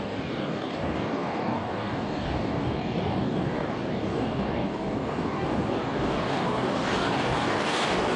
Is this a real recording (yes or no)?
no